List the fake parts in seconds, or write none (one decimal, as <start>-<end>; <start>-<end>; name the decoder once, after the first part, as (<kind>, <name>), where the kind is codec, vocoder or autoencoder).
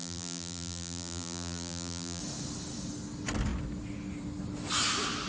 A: 0.0-2.2 (vocoder, BigVGAN v2)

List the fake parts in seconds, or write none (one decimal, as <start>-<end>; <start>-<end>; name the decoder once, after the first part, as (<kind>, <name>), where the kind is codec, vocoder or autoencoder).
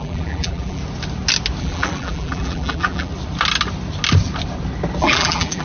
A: 0.0-0.8 (vocoder, BigVGAN v2); 1.6-3.1; 5.0-5.6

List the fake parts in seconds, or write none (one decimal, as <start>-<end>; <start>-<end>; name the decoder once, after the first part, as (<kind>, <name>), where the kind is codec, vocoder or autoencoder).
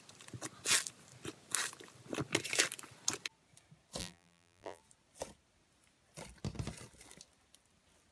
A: 4.0-4.8 (vocoder, BigVGAN v2)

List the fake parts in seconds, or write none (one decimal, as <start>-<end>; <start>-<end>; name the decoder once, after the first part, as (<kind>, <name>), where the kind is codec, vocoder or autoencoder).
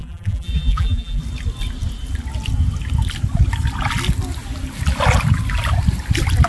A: 0.0-1.2 (vocoder, BigVGAN v2)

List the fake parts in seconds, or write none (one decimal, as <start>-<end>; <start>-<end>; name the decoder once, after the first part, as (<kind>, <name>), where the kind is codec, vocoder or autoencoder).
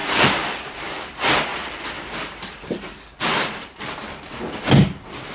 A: 0.0-1.0 (vocoder, BigVGAN v2); 1.5-4.0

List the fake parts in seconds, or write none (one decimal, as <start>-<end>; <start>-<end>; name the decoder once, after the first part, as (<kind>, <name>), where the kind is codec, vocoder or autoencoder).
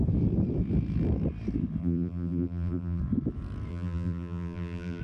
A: 1.8-3.0 (vocoder, BigVGAN v2); 3.7-5.0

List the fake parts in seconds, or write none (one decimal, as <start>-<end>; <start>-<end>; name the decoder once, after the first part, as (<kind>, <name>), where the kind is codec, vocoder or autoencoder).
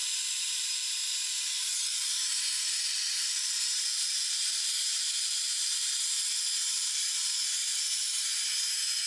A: 0.0-3.8 (vocoder, BigVGAN v2); 4.9-7.3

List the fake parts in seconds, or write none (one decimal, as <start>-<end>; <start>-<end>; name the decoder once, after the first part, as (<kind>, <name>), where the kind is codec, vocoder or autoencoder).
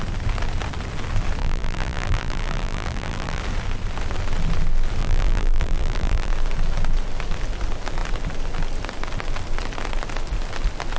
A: 1.4-3.4 (vocoder, BigVGAN v2); 5.0-6.3